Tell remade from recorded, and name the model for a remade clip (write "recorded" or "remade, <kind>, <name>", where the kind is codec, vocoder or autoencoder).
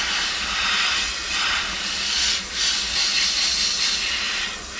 recorded